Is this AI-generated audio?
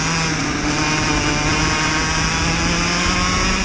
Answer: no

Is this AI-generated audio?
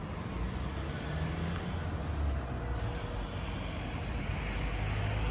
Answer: no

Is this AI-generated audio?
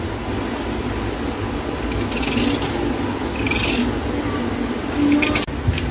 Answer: no